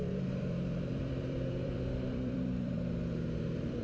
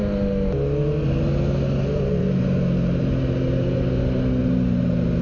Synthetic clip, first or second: first